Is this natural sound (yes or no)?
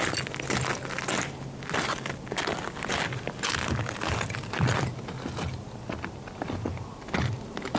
yes